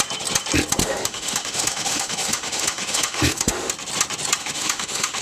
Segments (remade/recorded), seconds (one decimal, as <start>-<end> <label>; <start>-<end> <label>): 0.0-0.8 recorded; 0.8-3.7 remade; 3.7-4.4 recorded; 4.4-5.2 remade